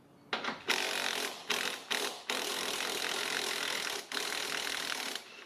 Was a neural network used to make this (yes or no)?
no